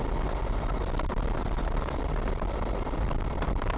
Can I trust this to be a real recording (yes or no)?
no